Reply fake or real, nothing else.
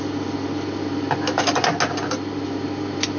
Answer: real